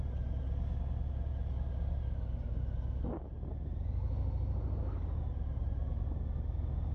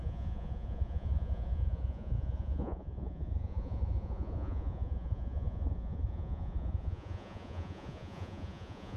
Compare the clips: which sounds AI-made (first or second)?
second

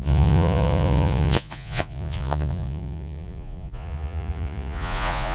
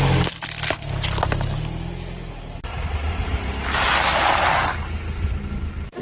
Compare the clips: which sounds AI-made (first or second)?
first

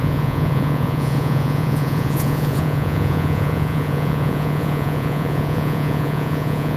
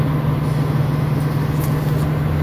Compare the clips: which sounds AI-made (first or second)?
first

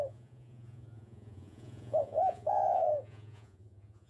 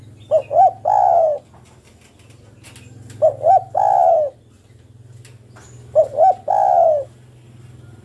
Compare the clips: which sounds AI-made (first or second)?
first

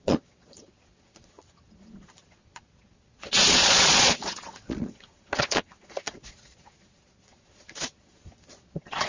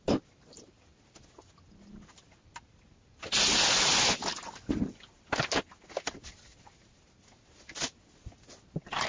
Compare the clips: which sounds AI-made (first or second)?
first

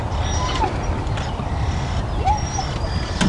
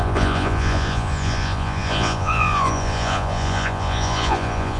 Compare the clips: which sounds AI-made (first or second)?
second